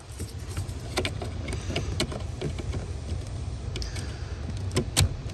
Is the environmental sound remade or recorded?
recorded